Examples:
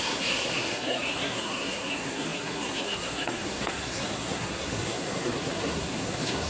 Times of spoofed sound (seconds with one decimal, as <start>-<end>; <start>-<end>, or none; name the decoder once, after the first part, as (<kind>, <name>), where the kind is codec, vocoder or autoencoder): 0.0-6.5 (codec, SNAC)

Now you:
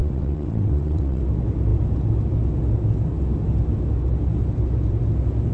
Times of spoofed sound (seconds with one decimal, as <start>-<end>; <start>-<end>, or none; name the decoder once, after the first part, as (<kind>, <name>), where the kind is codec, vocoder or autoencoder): 0.0-1.2 (vocoder, WaveNeXt)

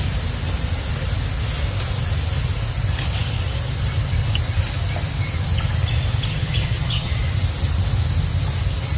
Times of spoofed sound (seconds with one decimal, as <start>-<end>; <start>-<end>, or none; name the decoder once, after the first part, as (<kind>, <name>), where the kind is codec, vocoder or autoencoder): 6.3-7.1 (vocoder, HiFi-GAN)

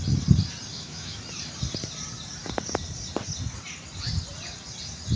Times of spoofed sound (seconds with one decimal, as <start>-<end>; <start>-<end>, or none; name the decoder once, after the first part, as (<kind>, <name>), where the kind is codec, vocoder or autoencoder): 0.7-1.2 (autoencoder, DAC-VAE)

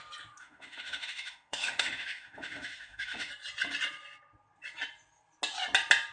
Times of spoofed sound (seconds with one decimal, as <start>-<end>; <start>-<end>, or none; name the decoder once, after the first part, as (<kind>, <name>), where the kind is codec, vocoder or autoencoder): 0.4-3.3 (autoencoder, DAC-VAE)